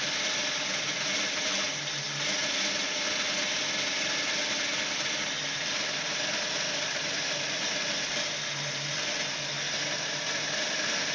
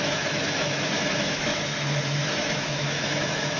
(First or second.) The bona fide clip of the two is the first